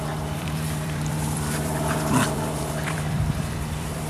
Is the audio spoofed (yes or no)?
yes